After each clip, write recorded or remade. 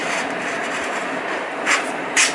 remade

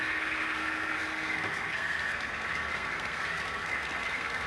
remade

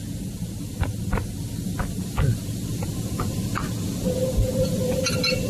recorded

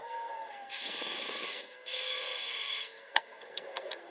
remade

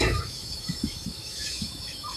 remade